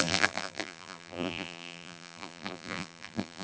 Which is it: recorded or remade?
remade